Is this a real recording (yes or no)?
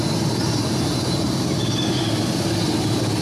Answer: yes